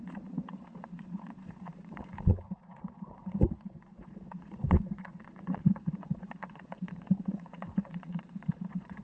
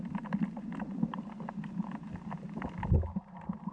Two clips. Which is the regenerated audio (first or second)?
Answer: first